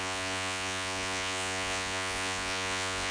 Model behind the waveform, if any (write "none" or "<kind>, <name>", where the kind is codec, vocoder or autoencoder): vocoder, Vocos